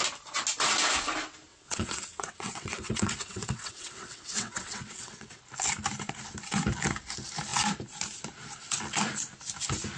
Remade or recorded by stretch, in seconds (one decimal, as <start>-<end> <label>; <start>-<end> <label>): 0.0-1.5 recorded; 1.5-5.4 remade; 5.4-10.0 recorded